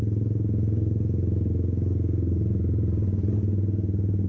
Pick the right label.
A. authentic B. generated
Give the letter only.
A